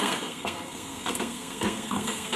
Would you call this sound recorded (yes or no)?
no